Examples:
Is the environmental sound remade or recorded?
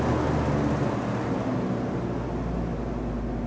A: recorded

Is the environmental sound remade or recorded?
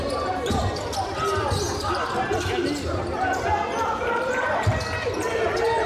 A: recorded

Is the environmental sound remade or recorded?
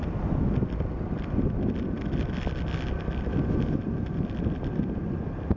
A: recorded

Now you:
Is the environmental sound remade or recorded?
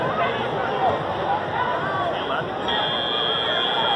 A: recorded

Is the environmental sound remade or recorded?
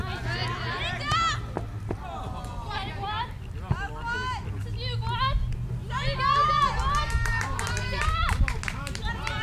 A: recorded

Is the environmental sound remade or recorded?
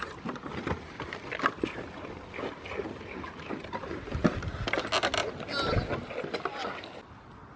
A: recorded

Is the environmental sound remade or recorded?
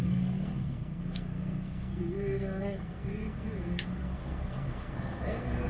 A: remade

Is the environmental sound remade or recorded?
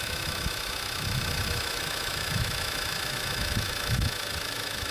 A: remade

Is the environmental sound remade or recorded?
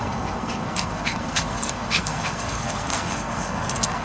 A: remade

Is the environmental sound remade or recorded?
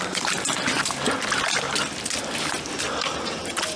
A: recorded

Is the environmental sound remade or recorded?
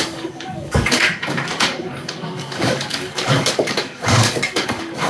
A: remade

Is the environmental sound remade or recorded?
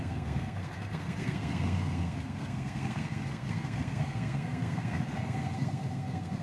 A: remade